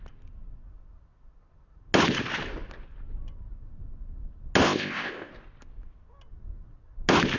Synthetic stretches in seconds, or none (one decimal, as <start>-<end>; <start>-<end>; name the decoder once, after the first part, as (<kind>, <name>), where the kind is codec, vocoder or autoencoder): 4.6-5.3 (codec, ZipCodec)